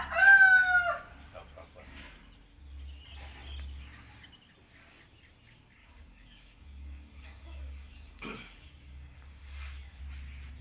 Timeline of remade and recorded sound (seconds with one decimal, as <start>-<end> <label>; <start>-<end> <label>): 0.0-5.8 recorded; 5.8-10.0 remade; 10.0-10.6 recorded